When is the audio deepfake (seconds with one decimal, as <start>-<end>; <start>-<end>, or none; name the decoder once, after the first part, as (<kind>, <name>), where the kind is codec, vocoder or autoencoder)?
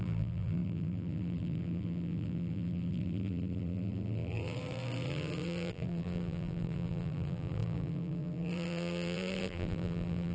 0.0-10.3 (vocoder, BigVGAN v2)